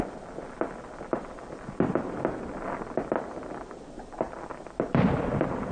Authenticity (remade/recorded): remade